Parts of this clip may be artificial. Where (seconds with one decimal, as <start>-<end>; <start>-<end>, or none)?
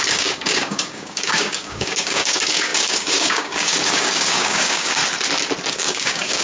0.0-5.0; 5.7-6.4